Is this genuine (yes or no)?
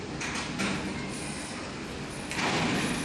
yes